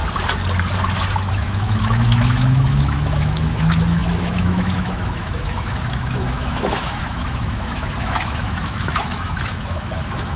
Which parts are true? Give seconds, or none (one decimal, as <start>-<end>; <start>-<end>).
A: 0.0-1.3